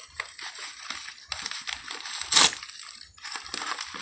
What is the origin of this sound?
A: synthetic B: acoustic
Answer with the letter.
B